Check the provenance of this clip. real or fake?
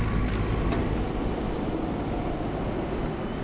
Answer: real